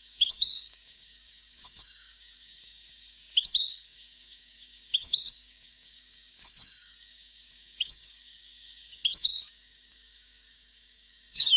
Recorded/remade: remade